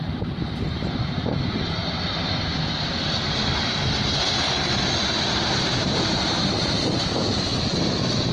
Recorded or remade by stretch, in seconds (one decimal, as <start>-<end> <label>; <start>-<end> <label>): 0.0-1.8 remade; 1.8-2.6 recorded; 2.6-3.6 remade; 3.6-5.2 recorded; 5.2-7.5 remade; 7.5-8.3 recorded